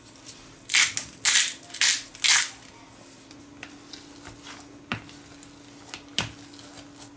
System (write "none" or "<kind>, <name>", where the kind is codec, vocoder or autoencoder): none